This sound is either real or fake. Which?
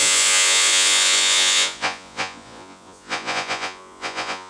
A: fake